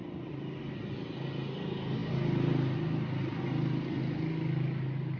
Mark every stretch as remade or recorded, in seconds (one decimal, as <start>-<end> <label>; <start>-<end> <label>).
0.0-0.6 remade; 0.6-5.2 recorded